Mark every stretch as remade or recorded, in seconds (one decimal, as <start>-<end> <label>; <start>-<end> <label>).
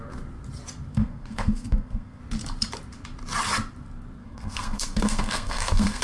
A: 0.0-0.9 recorded; 0.9-2.2 remade; 2.2-4.2 recorded; 4.2-6.0 remade